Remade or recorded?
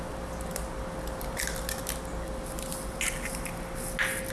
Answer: recorded